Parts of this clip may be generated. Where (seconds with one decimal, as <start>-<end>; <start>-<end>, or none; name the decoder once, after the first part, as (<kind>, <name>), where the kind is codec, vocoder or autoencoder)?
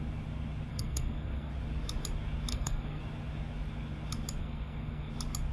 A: 0.7-1.5 (codec, SNAC); 2.5-3.0; 4.4-5.1